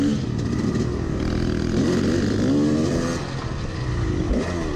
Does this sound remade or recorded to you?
recorded